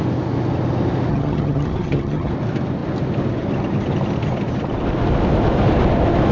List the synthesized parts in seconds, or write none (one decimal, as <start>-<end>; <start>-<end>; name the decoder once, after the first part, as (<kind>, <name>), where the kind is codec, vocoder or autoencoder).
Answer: 1.1-2.3 (vocoder, HiFi-GAN)